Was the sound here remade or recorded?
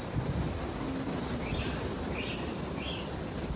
recorded